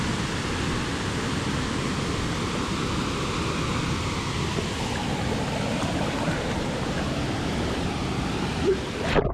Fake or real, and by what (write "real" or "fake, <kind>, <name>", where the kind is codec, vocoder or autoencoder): real